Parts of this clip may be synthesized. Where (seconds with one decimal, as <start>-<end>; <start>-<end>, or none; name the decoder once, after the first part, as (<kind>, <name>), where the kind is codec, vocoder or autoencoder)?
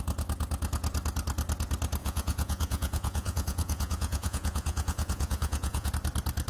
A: 2.0-5.9 (vocoder, Vocos)